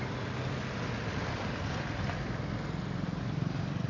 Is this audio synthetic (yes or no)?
no